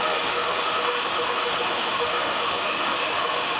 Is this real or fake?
fake